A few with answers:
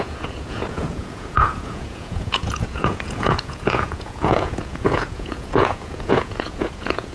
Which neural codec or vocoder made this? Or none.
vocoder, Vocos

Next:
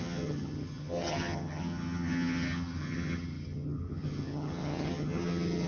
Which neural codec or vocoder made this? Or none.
vocoder, HiFi-GAN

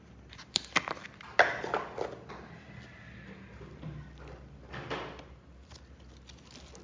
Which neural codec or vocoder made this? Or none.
none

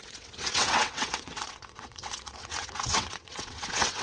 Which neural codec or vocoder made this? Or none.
vocoder, WaveNeXt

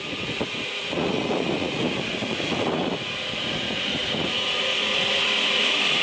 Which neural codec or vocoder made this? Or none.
vocoder, Vocos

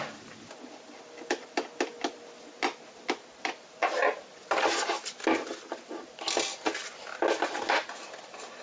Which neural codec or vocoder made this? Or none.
none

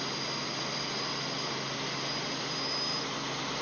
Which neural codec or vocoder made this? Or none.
none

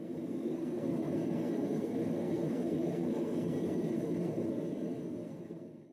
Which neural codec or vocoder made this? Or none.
codec, SNAC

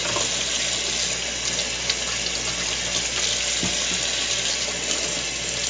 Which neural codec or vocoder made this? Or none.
none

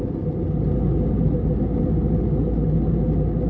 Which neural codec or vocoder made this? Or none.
none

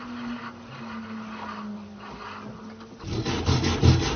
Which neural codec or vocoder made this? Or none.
none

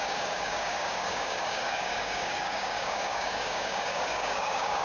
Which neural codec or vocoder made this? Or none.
codec, DAC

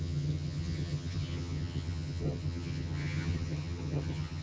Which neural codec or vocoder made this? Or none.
vocoder, HiFi-GAN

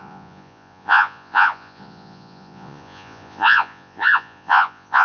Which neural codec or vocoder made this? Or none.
vocoder, Vocos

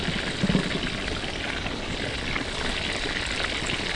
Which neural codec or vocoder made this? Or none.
none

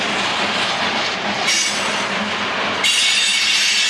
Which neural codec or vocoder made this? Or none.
none